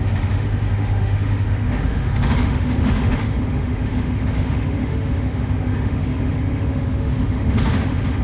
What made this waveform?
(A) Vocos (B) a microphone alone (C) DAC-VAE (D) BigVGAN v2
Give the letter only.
C